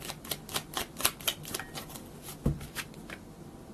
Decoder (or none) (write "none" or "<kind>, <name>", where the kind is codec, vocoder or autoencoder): none